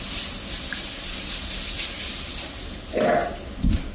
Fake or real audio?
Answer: real